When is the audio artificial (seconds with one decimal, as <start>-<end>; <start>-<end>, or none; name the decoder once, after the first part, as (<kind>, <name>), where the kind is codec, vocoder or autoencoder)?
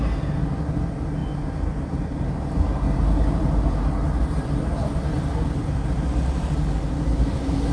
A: none